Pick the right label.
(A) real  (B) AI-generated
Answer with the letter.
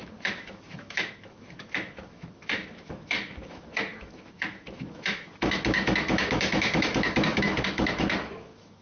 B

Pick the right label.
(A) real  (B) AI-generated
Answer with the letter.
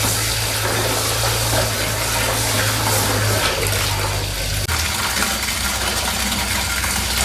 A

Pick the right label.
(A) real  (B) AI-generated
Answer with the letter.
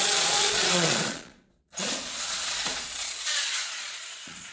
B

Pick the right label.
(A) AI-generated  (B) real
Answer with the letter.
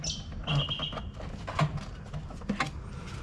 B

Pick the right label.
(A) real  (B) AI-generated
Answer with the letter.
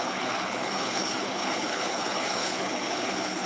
B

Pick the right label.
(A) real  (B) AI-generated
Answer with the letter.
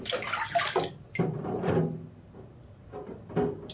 A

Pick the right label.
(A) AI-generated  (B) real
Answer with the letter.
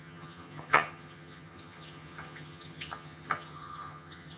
A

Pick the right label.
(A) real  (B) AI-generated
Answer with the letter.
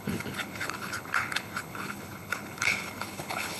B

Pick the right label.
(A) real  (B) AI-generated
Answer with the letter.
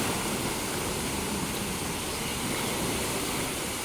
A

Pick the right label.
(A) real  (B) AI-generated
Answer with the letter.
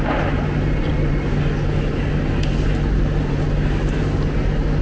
A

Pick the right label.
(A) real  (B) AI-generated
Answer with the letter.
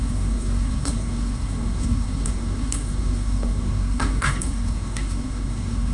B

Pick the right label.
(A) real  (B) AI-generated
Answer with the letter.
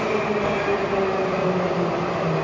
A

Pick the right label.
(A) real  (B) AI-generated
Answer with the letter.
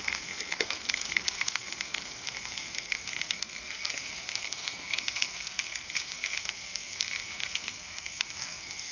B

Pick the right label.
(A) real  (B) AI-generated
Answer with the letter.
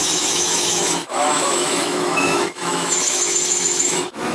B